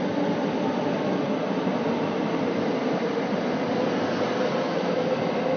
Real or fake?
real